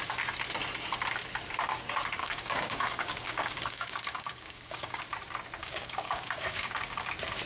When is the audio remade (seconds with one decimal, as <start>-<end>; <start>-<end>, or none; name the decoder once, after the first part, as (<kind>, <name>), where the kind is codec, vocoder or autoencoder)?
2.2-5.0 (codec, DAC); 5.6-7.1